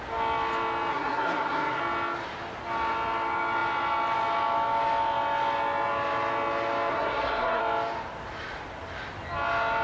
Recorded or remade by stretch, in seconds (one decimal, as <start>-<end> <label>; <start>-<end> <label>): 0.0-0.9 recorded; 0.9-1.8 remade; 1.8-6.9 recorded; 6.9-7.6 remade; 7.6-9.8 recorded